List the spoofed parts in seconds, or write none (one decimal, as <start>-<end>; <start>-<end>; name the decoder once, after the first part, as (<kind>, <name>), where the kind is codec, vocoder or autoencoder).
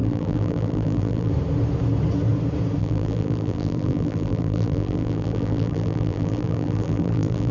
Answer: 0.0-1.3 (vocoder, BigVGAN v2); 2.8-7.5